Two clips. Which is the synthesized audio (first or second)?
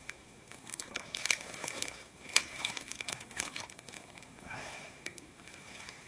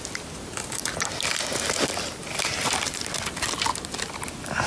first